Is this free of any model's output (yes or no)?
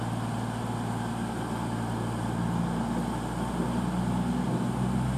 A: yes